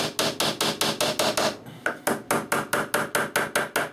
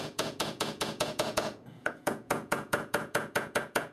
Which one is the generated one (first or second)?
second